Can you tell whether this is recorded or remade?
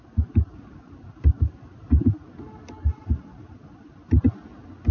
recorded